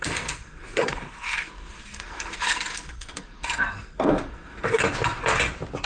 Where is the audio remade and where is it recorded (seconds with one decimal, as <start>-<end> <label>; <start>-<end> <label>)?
0.0-4.8 remade; 4.8-5.9 recorded